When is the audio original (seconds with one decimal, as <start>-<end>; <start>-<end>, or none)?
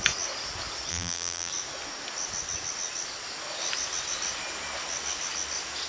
0.0-0.9; 1.5-5.9